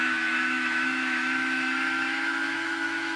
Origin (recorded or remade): remade